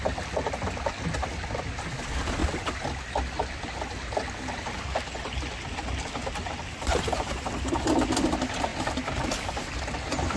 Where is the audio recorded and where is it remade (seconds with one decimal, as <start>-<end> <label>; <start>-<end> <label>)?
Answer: 0.0-10.4 recorded